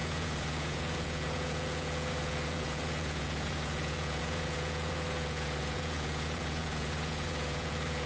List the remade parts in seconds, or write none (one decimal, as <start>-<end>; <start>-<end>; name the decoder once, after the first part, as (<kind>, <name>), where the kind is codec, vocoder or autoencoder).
0.0-8.1 (vocoder, Vocos)